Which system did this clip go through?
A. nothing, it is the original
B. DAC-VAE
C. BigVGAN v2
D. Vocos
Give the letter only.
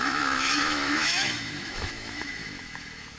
B